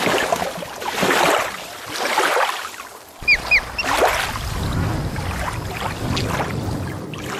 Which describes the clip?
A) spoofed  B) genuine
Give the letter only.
B